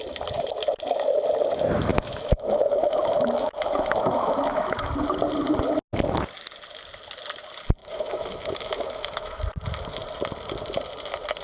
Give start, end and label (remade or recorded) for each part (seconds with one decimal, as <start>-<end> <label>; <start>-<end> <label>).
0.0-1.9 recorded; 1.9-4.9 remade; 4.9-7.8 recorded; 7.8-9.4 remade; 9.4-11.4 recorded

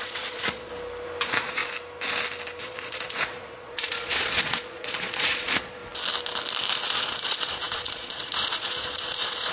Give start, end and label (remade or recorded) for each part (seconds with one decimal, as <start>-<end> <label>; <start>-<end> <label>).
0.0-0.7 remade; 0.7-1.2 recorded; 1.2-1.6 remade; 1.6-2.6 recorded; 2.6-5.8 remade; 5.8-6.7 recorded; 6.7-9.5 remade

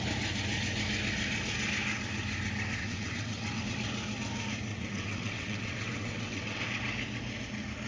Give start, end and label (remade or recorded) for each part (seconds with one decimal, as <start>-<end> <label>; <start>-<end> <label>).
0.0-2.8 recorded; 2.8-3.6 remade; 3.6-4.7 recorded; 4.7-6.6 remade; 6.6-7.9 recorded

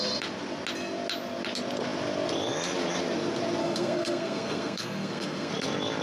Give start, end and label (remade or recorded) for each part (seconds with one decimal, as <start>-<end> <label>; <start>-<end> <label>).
0.0-3.6 recorded; 3.6-5.5 remade; 5.5-6.0 recorded

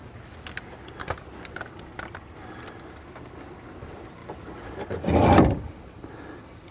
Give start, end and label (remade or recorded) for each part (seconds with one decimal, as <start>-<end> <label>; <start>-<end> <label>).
0.0-6.7 recorded

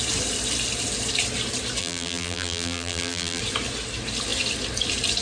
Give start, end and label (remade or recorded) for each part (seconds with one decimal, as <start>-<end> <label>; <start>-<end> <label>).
0.0-1.8 recorded; 1.8-3.4 remade; 3.4-5.2 recorded